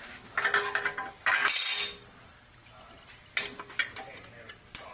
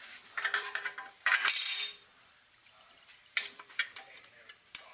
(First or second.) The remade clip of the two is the second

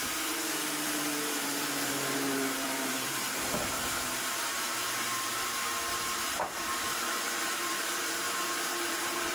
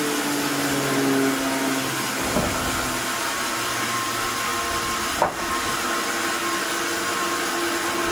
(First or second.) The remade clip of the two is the first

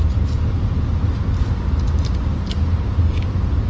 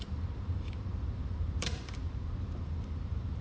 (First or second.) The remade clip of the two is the second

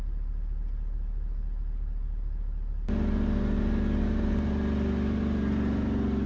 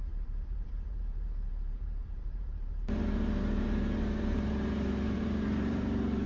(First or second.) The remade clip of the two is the second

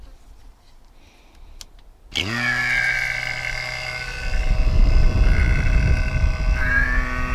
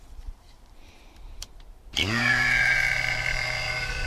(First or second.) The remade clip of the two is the second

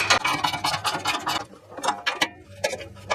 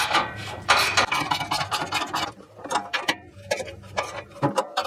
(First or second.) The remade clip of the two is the second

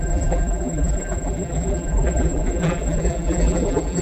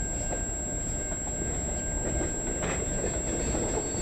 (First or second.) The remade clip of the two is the first